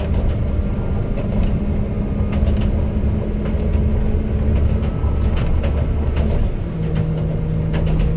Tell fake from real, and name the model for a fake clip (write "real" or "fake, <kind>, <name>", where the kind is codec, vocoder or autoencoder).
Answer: real